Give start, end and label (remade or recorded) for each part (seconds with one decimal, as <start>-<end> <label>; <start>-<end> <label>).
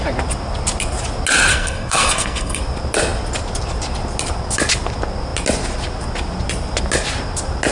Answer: 0.0-1.5 recorded; 1.5-2.6 remade; 2.6-7.7 recorded